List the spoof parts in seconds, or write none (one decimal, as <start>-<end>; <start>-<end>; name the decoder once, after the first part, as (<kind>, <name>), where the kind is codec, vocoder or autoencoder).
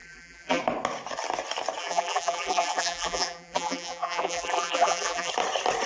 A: 0.0-0.6 (vocoder, BigVGAN v2); 1.8-5.3